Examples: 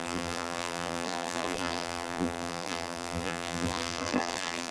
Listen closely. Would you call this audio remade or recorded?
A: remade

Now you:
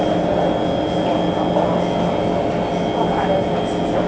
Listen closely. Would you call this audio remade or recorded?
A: recorded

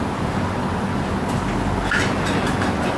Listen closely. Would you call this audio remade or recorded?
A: recorded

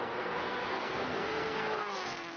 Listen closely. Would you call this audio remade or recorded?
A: remade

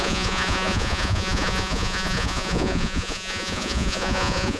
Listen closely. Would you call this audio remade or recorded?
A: remade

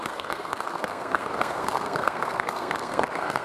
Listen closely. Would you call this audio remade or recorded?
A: remade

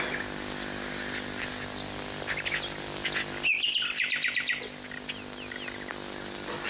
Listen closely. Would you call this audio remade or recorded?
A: recorded